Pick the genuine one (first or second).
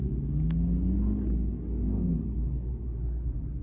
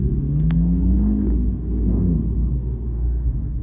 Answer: first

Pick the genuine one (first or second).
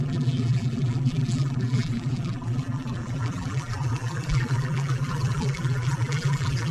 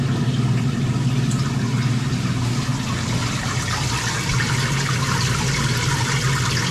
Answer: second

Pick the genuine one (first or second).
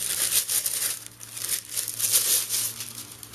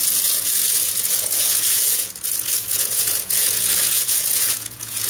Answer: first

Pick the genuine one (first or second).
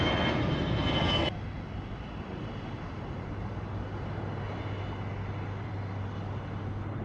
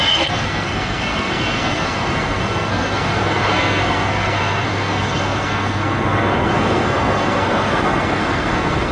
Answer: first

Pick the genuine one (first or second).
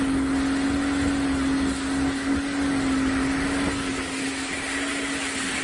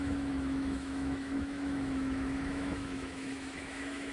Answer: first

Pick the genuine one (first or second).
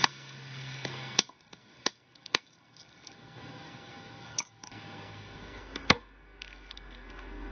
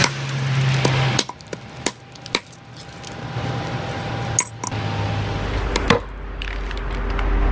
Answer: second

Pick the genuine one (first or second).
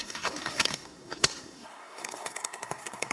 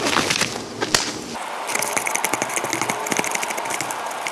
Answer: second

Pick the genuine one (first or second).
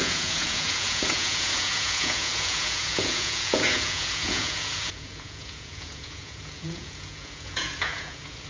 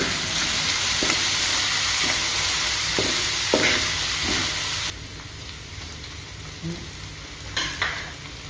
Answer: second